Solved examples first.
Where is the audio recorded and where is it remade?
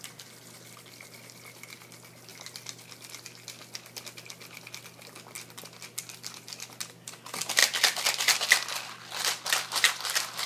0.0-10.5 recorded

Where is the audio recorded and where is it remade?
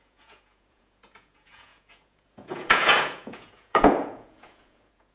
0.0-5.1 remade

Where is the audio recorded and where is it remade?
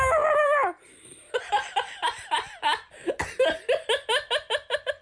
0.0-5.0 recorded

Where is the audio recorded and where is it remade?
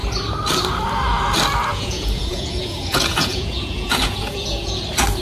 0.0-1.7 recorded; 1.7-4.8 remade; 4.8-5.2 recorded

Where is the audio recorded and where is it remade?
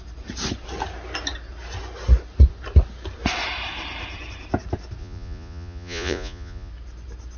0.0-5.0 recorded; 5.0-6.7 remade; 6.7-7.4 recorded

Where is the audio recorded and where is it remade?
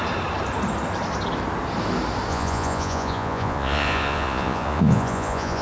0.0-2.3 recorded; 2.3-5.6 remade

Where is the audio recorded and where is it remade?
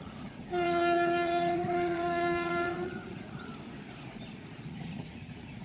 0.0-3.5 remade; 3.5-4.3 recorded; 4.3-5.6 remade